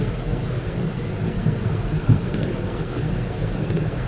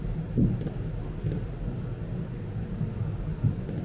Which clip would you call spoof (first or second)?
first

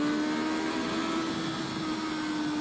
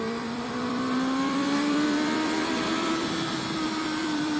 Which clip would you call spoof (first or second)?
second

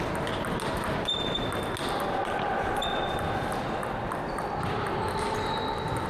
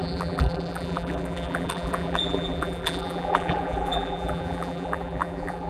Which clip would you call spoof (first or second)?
second